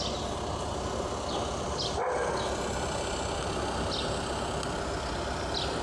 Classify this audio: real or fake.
real